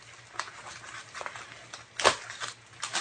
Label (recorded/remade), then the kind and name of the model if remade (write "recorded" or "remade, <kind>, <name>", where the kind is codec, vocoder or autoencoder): recorded